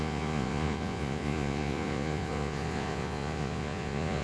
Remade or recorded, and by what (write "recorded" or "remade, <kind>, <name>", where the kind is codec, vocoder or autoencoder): remade, vocoder, Vocos